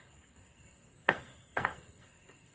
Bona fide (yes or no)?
no